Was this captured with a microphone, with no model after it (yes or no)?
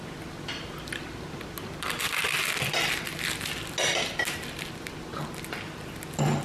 yes